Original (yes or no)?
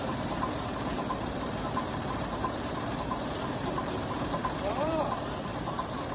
no